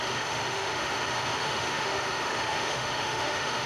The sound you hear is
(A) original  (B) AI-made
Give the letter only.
B